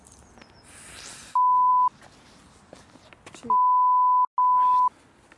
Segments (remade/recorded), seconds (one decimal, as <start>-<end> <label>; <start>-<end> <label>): 0.0-5.4 recorded